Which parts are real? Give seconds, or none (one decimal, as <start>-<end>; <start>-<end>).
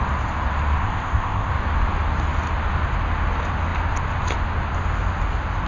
0.0-0.8; 1.5-5.7